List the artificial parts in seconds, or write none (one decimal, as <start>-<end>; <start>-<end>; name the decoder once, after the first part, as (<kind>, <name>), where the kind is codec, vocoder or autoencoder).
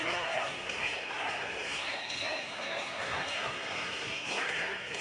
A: 0.0-5.0 (codec, SNAC)